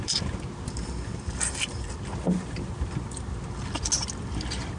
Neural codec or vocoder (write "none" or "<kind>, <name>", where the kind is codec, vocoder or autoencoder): none